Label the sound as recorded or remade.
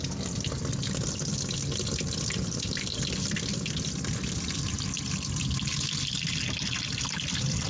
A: recorded